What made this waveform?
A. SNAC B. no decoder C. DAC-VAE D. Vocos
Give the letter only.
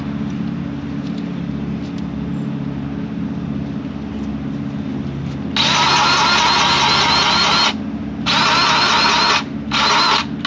B